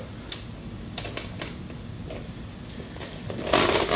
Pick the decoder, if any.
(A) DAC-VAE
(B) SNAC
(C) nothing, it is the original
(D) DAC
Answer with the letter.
C